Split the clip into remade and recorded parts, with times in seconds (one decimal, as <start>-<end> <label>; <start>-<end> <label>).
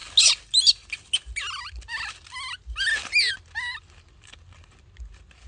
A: 0.0-5.5 recorded